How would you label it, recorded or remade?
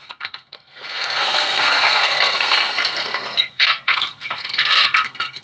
remade